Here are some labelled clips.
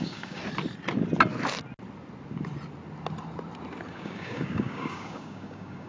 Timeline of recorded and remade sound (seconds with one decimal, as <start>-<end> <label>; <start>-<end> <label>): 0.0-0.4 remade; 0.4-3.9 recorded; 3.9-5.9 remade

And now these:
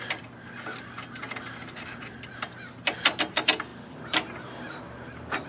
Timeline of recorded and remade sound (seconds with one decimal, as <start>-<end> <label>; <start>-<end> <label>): 0.0-5.5 recorded

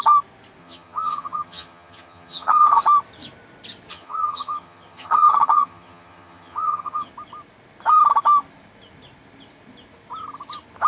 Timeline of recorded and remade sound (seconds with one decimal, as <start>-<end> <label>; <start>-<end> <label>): 0.0-0.6 recorded; 0.6-2.8 remade; 2.8-3.9 recorded; 3.9-7.1 remade; 7.1-10.9 recorded

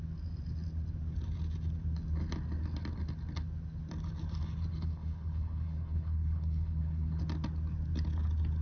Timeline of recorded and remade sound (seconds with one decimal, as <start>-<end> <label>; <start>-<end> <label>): 0.0-4.7 recorded; 4.7-7.2 remade; 7.2-8.6 recorded

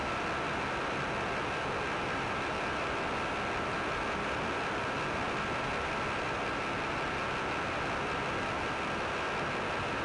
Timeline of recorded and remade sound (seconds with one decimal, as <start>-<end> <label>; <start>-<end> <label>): 0.0-10.0 recorded

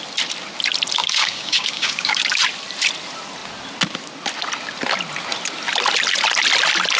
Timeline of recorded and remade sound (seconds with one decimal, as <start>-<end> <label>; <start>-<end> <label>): 0.0-1.0 recorded; 1.0-2.2 remade; 2.2-7.0 recorded

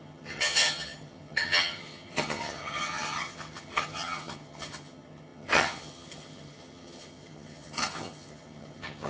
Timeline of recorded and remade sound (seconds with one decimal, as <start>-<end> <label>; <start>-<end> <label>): 0.0-9.1 remade

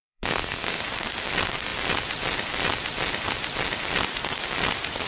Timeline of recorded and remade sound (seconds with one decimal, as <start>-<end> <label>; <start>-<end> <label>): 0.0-0.8 remade; 0.8-5.1 recorded